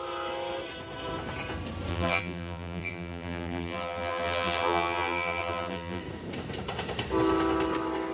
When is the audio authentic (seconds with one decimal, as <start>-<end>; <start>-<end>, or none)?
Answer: 0.0-1.9; 6.0-8.1